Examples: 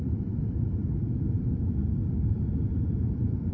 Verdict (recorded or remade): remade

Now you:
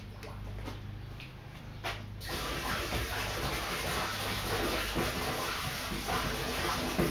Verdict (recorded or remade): recorded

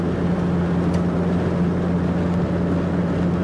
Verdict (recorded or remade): recorded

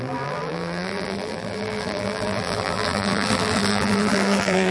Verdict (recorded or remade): remade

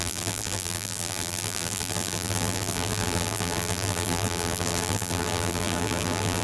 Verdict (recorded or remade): remade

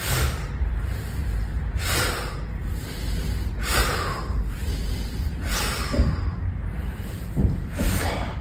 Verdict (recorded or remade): remade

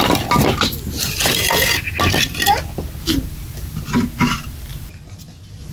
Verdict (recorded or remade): recorded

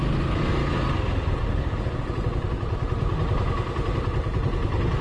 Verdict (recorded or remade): recorded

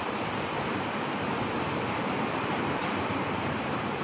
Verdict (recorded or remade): remade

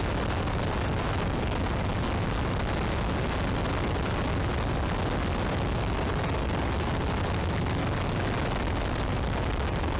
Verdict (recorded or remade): recorded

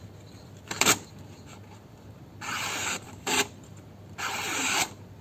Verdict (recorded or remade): remade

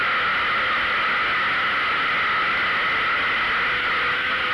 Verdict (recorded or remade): recorded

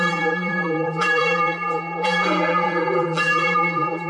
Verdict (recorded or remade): remade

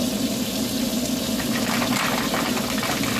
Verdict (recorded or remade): remade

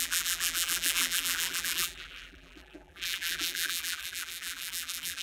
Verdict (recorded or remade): remade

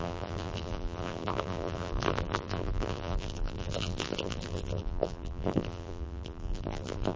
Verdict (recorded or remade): remade